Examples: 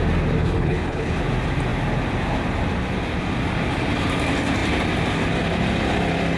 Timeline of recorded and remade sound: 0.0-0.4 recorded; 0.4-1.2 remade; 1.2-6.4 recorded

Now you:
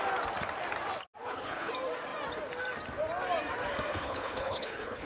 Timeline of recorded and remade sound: 0.0-1.2 recorded; 1.2-1.7 remade; 1.7-3.9 recorded; 3.9-5.1 remade

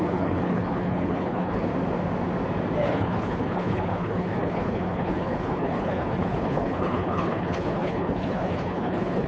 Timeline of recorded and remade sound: 0.0-1.7 remade; 1.7-2.9 recorded; 2.9-9.3 remade

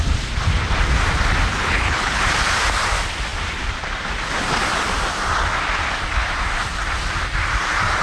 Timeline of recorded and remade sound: 0.0-1.6 recorded; 1.6-2.2 remade; 2.2-8.0 recorded

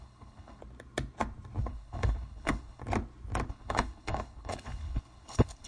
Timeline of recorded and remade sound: 0.0-0.6 remade; 0.6-1.6 recorded; 1.6-2.8 remade; 2.8-3.5 recorded; 3.5-5.7 remade